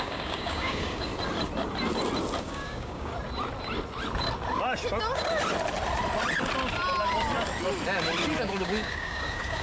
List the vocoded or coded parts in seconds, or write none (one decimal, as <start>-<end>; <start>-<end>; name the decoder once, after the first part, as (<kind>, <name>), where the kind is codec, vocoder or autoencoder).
0.0-1.1 (codec, DAC); 2.4-3.1; 8.4-9.6